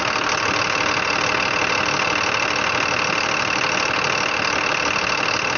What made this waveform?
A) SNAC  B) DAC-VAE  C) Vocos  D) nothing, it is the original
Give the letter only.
D